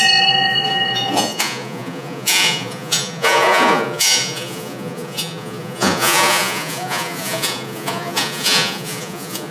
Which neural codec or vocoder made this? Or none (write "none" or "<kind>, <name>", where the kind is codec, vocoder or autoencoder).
vocoder, Vocos